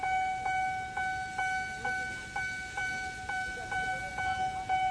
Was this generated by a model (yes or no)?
no